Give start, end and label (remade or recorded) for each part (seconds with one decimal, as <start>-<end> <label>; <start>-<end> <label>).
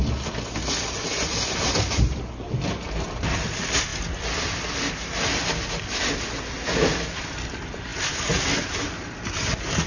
0.0-9.9 recorded